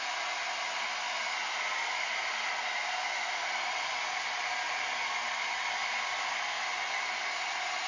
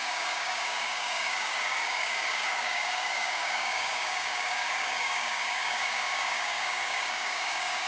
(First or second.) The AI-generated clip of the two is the second